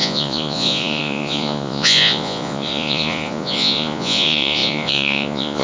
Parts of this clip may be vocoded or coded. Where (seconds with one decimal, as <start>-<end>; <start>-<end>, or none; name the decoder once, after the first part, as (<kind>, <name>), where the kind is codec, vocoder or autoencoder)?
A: 0.0-5.6 (vocoder, Vocos)